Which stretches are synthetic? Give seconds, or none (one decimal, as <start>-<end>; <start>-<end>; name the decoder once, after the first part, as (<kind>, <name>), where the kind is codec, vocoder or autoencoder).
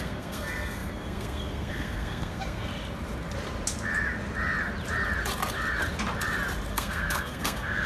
0.0-2.7 (codec, SNAC); 6.7-7.9